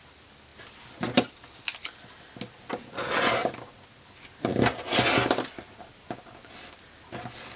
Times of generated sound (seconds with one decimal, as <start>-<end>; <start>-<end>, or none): none